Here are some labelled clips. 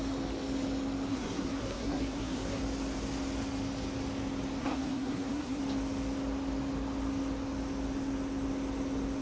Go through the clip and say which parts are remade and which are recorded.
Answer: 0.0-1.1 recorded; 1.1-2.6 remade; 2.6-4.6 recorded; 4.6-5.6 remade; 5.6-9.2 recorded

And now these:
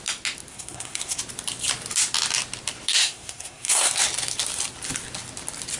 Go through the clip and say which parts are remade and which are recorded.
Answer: 0.0-0.5 recorded; 0.5-1.2 remade; 1.2-3.0 recorded; 3.0-3.9 remade; 3.9-5.8 recorded